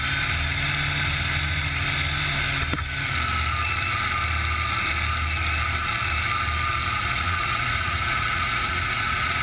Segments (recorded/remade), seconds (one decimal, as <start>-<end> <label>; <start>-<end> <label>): 0.0-6.8 recorded; 6.8-9.4 remade